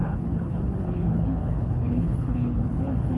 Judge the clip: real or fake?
fake